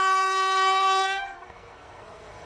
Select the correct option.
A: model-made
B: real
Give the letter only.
A